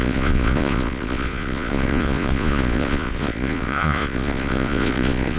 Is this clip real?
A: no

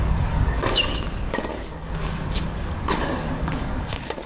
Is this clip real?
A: no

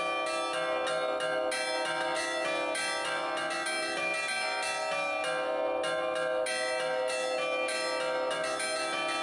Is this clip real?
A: yes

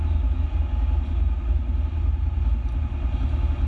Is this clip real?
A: yes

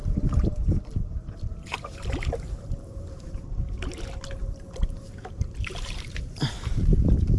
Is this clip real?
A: no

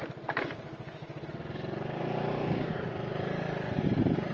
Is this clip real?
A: yes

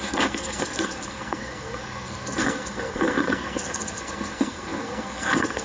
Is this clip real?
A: no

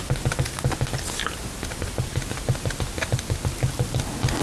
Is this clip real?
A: yes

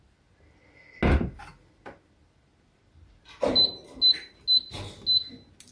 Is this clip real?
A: yes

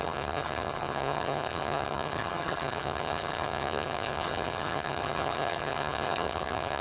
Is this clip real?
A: no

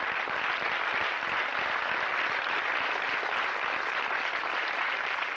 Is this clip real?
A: no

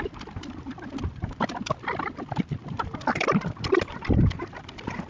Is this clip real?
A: yes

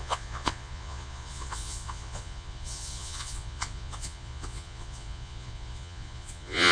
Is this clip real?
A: no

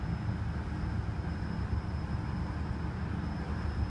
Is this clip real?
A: yes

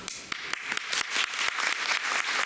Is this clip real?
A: yes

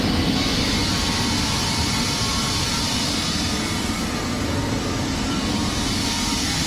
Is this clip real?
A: yes